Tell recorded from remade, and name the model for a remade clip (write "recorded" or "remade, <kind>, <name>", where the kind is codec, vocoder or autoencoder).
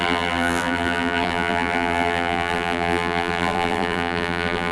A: remade, vocoder, BigVGAN v2